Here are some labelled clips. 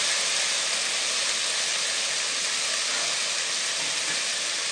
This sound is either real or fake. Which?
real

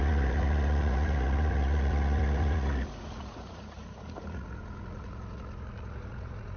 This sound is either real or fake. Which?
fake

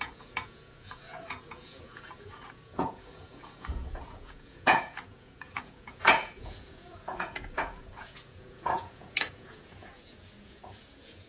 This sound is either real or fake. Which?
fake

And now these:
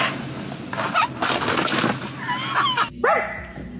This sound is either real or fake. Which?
real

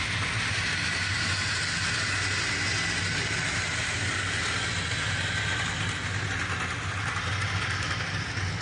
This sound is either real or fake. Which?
real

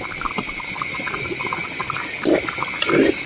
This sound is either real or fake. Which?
real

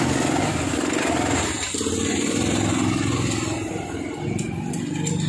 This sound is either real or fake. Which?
real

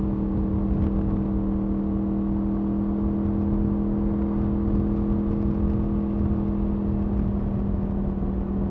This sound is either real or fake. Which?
real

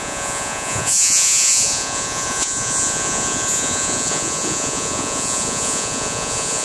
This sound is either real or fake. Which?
fake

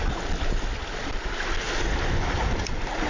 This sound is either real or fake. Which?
real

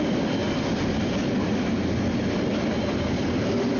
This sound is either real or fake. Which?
real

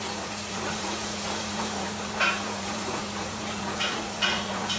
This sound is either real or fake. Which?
fake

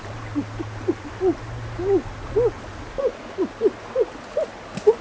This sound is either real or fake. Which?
real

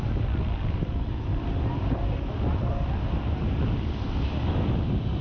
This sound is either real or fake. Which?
real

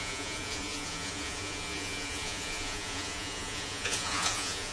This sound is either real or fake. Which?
fake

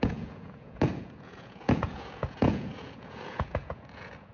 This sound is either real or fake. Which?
fake